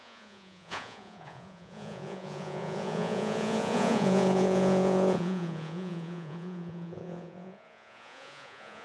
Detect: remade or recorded remade